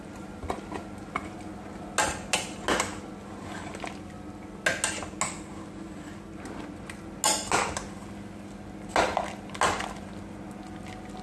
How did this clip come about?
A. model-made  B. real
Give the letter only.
B